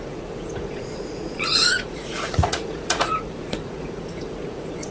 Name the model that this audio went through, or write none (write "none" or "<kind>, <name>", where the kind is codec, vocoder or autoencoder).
vocoder, Vocos